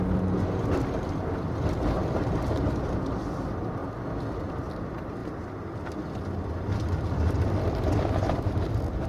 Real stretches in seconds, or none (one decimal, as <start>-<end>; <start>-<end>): 0.0-9.1